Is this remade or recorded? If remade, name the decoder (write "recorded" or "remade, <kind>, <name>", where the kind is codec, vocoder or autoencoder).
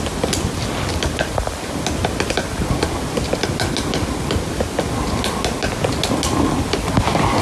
recorded